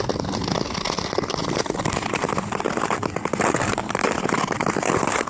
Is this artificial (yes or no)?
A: no